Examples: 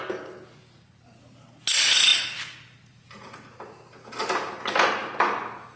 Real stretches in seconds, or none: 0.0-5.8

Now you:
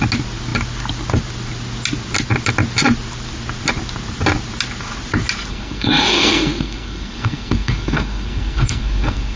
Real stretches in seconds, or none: 0.0-5.5

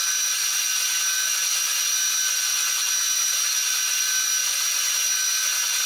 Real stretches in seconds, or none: 0.0-5.9